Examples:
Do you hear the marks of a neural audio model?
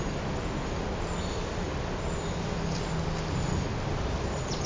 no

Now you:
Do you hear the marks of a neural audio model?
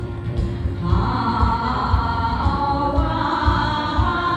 yes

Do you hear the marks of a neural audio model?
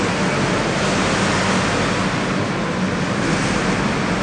no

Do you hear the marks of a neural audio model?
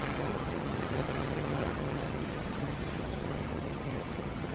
yes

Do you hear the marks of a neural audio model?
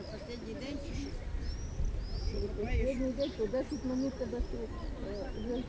no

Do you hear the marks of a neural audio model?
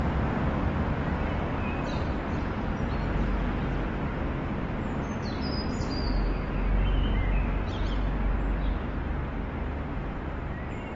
no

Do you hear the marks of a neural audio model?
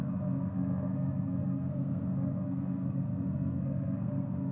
yes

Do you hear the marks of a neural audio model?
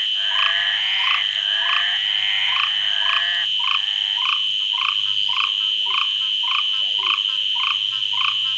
no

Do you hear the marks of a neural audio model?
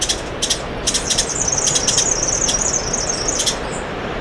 yes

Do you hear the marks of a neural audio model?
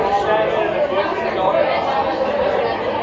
no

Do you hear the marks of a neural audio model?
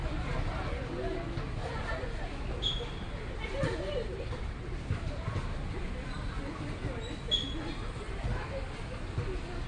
no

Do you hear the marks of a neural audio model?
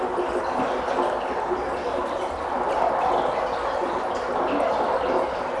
no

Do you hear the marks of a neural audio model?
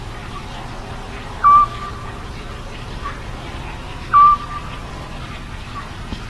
no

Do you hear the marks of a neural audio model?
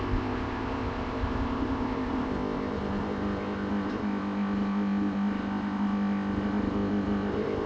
yes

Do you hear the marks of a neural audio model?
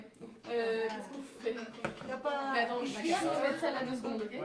yes